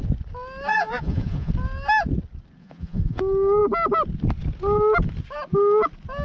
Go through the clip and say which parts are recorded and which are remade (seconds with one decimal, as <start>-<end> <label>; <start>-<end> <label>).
0.0-0.7 recorded; 0.7-1.5 remade; 1.5-2.6 recorded; 2.6-3.2 remade; 3.2-6.2 recorded